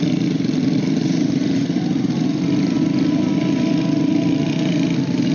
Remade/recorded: recorded